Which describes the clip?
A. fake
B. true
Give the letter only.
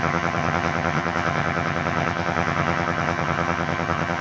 A